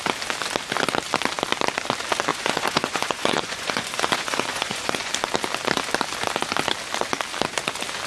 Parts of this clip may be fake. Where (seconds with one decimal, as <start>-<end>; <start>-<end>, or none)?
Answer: 2.3-5.1